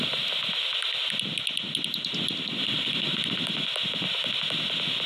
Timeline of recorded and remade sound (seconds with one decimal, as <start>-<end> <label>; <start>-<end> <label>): 0.0-5.1 recorded